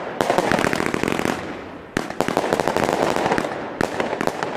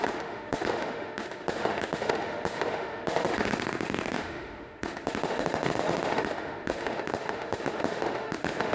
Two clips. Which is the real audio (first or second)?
first